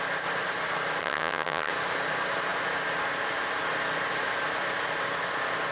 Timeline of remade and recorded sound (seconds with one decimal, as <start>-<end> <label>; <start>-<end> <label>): 0.0-1.0 recorded; 1.0-1.7 remade; 1.7-5.7 recorded